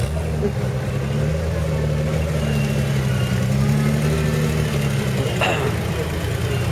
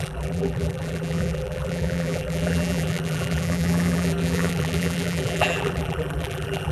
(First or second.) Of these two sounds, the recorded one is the first